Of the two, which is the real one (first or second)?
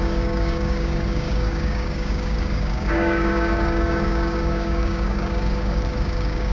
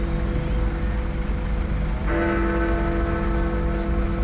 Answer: second